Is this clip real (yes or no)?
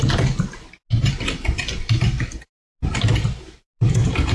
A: yes